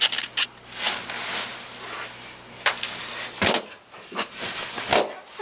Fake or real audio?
real